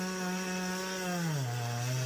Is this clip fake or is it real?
real